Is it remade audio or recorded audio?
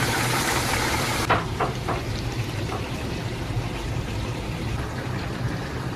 remade